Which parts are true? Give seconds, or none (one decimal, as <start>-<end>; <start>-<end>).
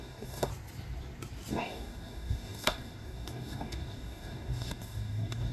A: 0.5-1.5